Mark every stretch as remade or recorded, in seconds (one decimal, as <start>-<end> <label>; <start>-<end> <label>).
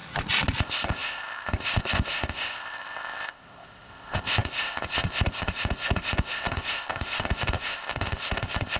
0.0-0.6 recorded; 0.6-8.8 remade